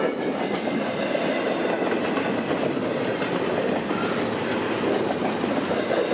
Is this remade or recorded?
recorded